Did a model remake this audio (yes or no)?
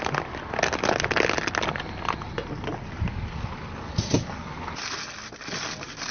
no